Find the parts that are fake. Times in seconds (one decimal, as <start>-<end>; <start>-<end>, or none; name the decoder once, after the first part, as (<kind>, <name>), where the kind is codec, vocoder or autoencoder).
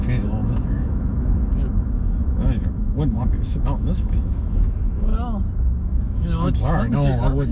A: 0.0-5.1 (autoencoder, DAC-VAE); 5.8-7.5